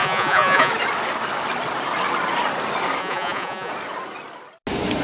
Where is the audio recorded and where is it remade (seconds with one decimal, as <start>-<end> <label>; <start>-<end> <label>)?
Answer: 0.0-0.7 remade; 0.7-3.0 recorded; 3.0-3.7 remade; 3.7-5.0 recorded